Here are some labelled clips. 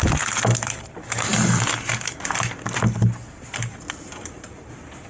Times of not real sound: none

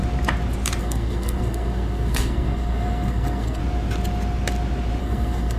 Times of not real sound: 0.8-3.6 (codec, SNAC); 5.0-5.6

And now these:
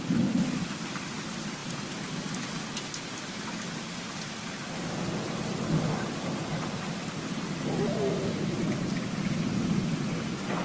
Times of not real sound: none

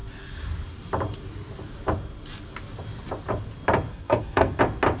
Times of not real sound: 3.9-4.6 (codec, SNAC)

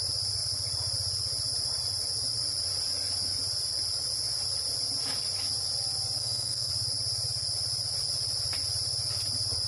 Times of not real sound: 6.2-6.7 (codec, SNAC)

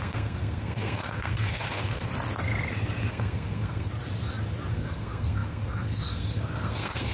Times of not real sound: 0.0-2.1 (codec, SNAC); 3.1-3.9; 4.7-7.1